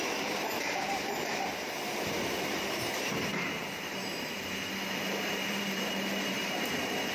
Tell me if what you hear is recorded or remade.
remade